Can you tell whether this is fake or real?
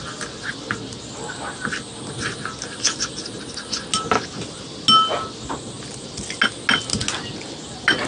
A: real